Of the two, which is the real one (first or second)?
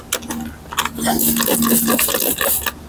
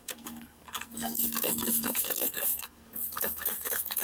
first